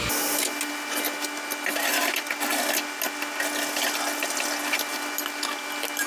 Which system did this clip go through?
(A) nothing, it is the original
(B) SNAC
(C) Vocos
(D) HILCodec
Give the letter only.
A